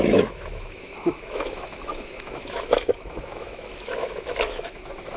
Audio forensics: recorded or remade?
remade